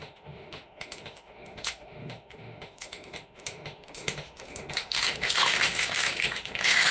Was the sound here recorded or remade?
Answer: remade